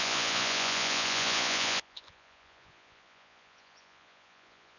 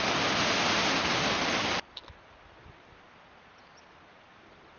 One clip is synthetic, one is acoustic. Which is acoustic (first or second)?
second